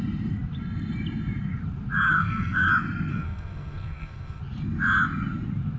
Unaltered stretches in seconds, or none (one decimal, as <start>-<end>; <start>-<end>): 0.0-2.1; 2.7-3.1; 4.4-5.8